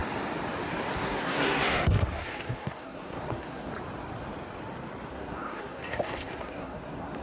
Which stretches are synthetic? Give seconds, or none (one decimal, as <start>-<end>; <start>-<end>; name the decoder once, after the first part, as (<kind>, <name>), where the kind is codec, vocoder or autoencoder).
1.0-3.7 (codec, SNAC); 5.1-7.2